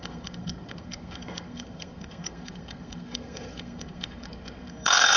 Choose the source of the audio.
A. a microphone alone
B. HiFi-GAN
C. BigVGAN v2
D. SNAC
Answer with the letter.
D